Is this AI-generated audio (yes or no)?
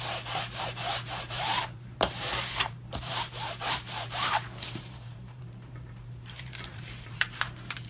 yes